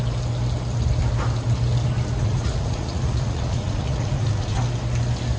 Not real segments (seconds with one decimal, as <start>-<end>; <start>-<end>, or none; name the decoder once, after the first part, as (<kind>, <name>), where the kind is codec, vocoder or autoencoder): 2.2-4.6 (vocoder, Vocos)